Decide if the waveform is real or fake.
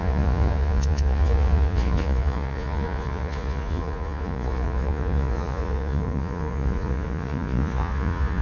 fake